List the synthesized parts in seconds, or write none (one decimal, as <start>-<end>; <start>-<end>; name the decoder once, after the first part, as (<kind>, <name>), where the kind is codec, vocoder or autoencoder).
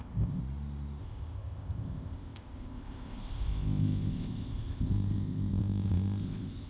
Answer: 0.0-0.4 (codec, ZipCodec); 1.0-6.7